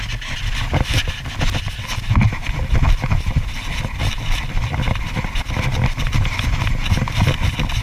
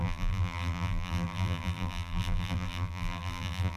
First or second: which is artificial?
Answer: second